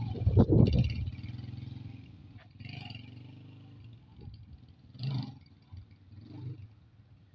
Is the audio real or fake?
real